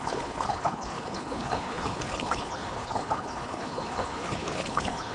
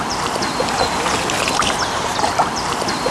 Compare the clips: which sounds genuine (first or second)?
second